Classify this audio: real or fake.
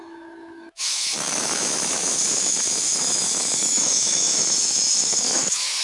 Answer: fake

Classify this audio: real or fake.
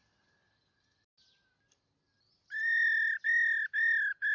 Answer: real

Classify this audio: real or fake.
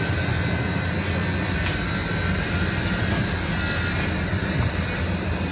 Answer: real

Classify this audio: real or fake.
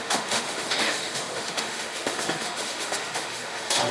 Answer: fake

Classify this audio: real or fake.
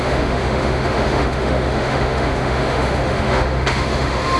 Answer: fake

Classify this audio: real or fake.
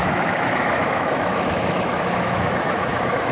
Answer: fake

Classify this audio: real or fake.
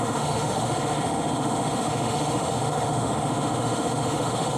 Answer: fake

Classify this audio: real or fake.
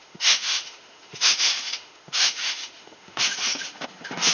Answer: fake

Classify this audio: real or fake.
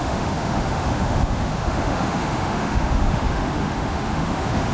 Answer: fake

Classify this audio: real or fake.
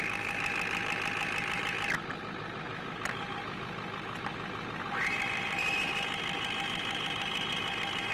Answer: real